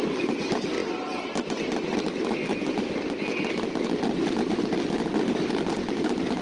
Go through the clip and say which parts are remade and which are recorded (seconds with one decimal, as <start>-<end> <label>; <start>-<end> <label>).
0.0-6.4 recorded